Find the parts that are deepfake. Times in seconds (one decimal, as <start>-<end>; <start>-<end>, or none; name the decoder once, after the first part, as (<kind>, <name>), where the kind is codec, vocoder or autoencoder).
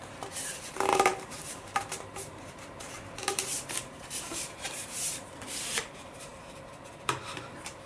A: 0.0-7.9 (vocoder, BigVGAN v2)